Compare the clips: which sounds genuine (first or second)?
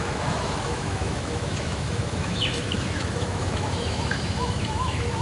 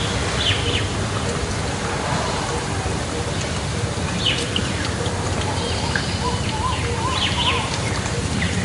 second